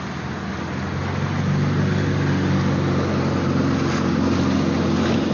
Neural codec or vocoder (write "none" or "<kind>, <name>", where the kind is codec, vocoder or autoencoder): none